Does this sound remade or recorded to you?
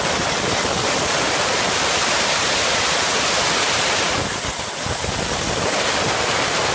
recorded